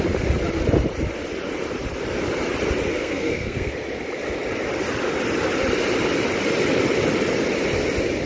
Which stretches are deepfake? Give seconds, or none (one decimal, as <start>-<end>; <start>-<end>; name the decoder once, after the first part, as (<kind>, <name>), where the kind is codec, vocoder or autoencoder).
2.9-3.7 (codec, SNAC)